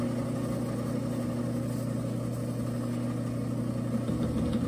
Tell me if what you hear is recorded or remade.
recorded